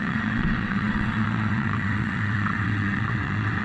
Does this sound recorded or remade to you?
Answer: remade